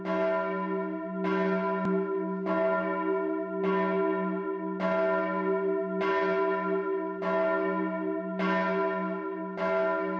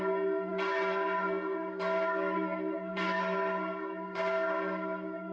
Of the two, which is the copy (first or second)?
second